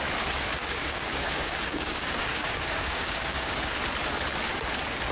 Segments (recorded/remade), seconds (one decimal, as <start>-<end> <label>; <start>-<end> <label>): 0.0-0.6 recorded; 0.6-3.7 remade; 3.7-5.1 recorded